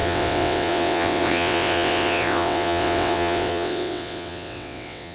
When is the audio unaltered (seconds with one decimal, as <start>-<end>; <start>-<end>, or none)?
none